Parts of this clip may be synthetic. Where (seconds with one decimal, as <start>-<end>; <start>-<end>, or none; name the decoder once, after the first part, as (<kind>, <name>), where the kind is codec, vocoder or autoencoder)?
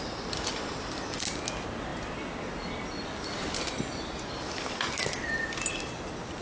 none